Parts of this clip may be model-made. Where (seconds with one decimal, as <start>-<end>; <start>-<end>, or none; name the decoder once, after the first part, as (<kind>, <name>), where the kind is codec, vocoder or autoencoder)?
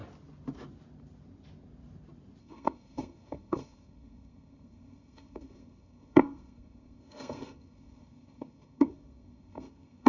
2.4-10.1 (codec, SNAC)